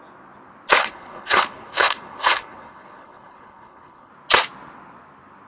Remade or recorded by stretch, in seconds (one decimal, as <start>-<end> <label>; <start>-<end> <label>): 0.0-0.8 recorded; 0.8-4.1 remade; 4.1-5.5 recorded